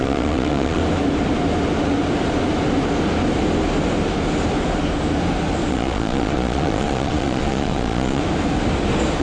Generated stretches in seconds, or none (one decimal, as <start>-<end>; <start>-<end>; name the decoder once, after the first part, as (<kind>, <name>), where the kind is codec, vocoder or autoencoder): 0.0-0.8 (vocoder, Vocos); 5.7-8.2